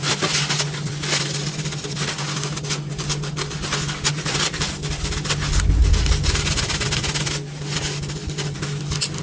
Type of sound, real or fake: real